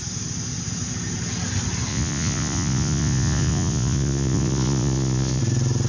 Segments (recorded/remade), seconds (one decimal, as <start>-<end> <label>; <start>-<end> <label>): 0.0-1.9 recorded; 1.9-5.4 remade; 5.4-5.9 recorded